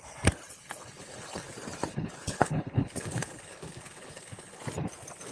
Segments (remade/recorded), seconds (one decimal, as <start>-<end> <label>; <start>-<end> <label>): 0.0-0.5 recorded; 0.5-1.5 remade; 1.5-1.9 recorded; 1.9-4.6 remade; 4.6-5.3 recorded